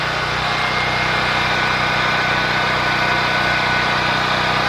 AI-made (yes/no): no